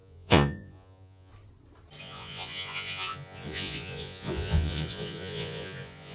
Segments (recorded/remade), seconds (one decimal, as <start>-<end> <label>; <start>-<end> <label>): 0.0-1.3 remade; 1.3-2.0 recorded; 2.0-6.1 remade